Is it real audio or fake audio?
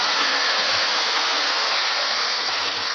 fake